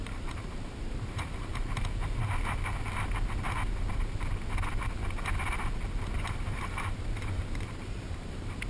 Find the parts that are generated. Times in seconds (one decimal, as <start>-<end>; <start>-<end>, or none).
0.0-1.5; 6.3-8.7